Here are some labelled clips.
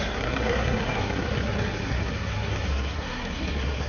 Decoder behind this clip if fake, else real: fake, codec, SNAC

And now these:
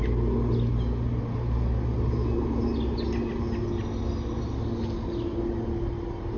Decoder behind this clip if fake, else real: real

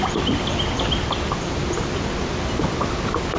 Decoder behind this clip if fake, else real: real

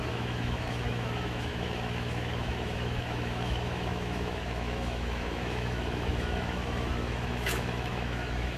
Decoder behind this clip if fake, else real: fake, autoencoder, DAC-VAE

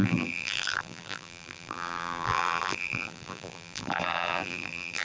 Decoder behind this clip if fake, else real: fake, vocoder, BigVGAN v2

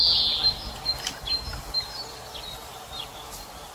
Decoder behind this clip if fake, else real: real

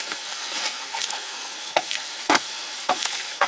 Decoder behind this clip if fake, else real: fake, codec, SNAC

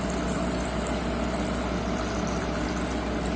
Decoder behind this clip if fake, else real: real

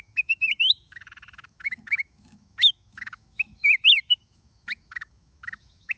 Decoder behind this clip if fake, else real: fake, autoencoder, DAC-VAE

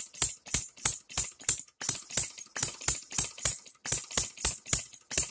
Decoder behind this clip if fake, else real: real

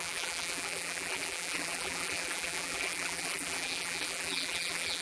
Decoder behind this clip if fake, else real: fake, vocoder, BigVGAN v2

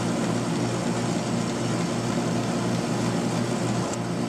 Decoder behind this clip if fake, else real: real